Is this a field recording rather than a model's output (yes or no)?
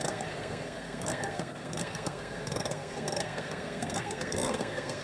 no